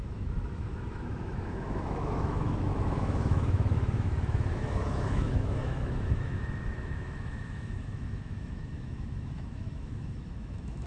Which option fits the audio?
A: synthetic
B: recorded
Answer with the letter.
A